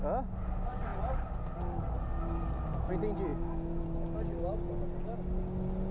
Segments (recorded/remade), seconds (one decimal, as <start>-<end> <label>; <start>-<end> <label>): 0.0-5.9 recorded